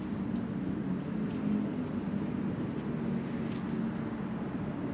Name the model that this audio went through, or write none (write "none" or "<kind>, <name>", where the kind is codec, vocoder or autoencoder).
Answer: none